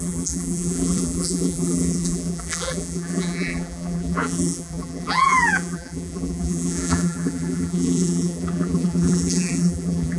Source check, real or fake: fake